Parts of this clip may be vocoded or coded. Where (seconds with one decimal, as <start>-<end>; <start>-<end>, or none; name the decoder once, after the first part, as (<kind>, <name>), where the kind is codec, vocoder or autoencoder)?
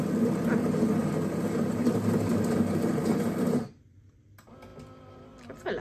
1.0-3.7 (vocoder, BigVGAN v2)